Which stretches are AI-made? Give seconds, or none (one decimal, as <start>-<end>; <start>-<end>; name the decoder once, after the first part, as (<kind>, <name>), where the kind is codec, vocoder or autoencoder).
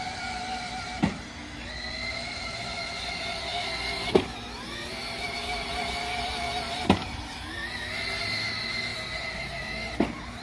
none